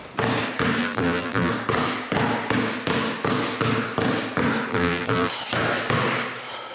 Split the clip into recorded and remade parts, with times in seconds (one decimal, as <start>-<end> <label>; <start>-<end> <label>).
0.0-0.8 recorded; 0.8-1.5 remade; 1.5-4.7 recorded; 4.7-5.3 remade; 5.3-6.7 recorded